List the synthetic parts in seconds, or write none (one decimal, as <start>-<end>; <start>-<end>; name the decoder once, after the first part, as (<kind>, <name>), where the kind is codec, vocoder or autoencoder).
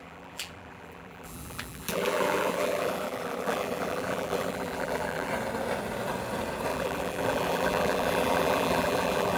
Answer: 0.0-5.3 (vocoder, BigVGAN v2); 6.7-9.4